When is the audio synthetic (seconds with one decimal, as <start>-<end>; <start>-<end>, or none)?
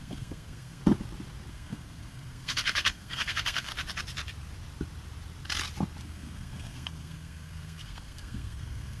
0.0-0.8; 1.5-3.7; 6.0-9.0